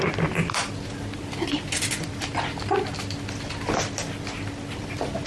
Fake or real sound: real